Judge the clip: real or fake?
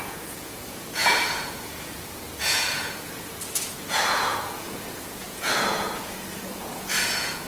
fake